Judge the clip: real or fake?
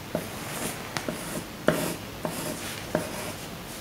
real